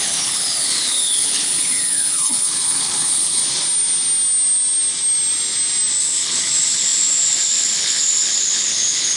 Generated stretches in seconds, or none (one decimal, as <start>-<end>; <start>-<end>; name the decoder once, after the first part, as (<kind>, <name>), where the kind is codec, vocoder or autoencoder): 0.0-3.4 (codec, HILCodec); 6.0-9.2